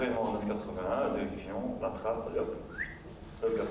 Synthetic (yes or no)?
no